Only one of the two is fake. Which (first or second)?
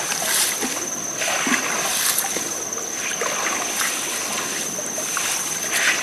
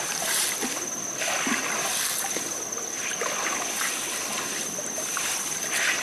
second